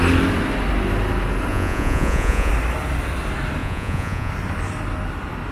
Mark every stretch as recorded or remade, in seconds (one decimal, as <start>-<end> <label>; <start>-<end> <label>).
0.0-1.5 recorded; 1.5-2.5 remade; 2.5-3.6 recorded; 3.6-4.3 remade; 4.3-5.5 recorded